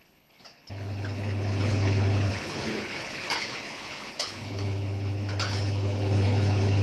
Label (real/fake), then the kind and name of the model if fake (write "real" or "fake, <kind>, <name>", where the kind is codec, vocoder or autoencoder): fake, codec, HILCodec